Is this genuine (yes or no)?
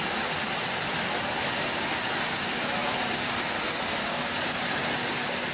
yes